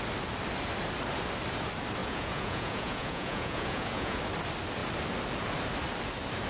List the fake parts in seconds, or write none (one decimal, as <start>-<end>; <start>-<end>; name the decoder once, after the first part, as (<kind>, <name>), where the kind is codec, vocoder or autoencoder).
2.0-4.2 (vocoder, Vocos)

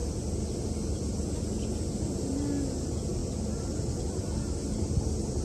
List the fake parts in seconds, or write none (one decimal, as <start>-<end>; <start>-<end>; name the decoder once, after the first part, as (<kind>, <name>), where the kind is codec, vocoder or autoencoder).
none

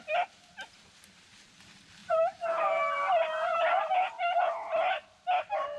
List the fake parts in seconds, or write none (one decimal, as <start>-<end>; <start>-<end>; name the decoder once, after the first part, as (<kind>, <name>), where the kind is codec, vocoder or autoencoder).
2.0-3.6 (vocoder, BigVGAN v2)

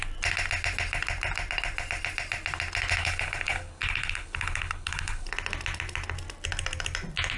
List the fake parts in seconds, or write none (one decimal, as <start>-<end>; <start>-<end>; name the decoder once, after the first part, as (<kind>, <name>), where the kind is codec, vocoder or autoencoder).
3.0-5.3 (codec, HILCodec)

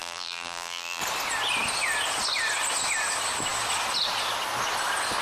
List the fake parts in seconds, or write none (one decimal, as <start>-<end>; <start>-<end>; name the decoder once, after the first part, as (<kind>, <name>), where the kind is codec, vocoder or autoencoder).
0.0-1.0 (vocoder, BigVGAN v2)